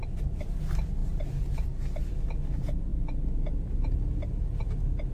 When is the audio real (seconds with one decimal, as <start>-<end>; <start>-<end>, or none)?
0.0-5.1